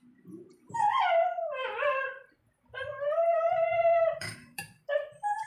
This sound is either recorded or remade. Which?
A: remade